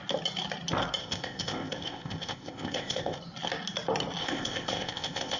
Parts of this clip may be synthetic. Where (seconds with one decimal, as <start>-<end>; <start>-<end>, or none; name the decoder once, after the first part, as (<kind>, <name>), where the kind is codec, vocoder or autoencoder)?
1.0-3.2 (codec, ZipCodec); 4.2-5.4